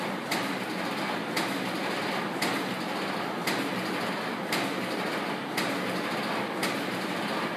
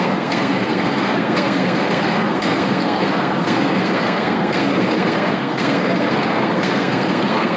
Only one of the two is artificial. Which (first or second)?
second